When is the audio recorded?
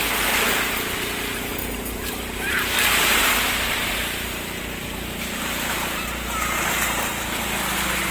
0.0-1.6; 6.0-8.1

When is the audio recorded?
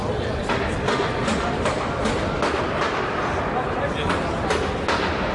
0.0-5.3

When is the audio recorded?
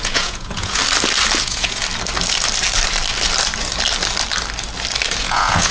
0.8-1.4; 1.8-5.2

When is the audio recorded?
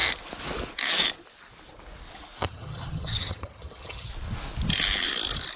0.0-2.4; 4.1-5.6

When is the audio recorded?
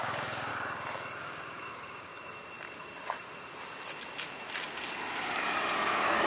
0.5-1.2; 2.1-5.8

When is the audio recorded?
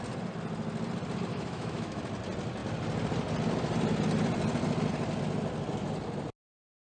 0.0-1.3; 2.0-6.9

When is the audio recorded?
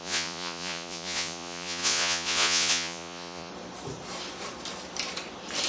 3.5-5.7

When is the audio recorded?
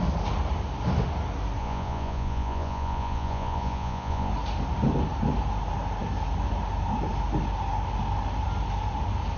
0.0-1.6; 4.3-9.4